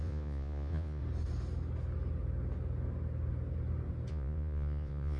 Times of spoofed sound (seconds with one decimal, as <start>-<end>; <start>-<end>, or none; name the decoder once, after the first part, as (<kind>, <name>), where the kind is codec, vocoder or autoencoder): 0.0-1.0 (vocoder, Vocos); 4.1-5.2